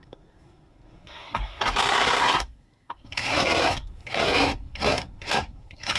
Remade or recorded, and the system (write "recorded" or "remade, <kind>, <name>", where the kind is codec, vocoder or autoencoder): remade, codec, SNAC